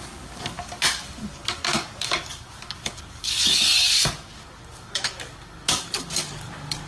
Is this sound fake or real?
fake